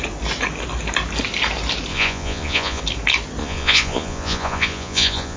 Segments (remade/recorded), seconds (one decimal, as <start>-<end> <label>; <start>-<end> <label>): 0.0-1.9 recorded; 1.9-2.8 remade; 2.8-3.4 recorded; 3.4-5.4 remade